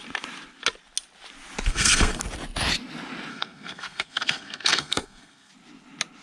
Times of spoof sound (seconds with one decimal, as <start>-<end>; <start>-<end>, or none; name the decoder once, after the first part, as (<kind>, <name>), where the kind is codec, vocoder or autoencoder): 1.7-2.2 (codec, SNAC); 3.3-5.5